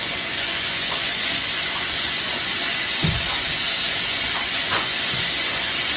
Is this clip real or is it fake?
fake